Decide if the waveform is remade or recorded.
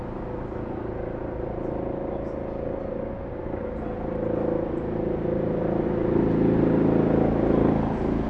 recorded